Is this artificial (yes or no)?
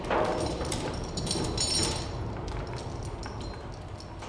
no